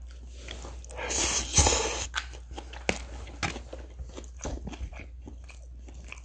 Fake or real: real